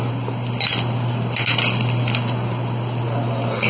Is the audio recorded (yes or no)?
yes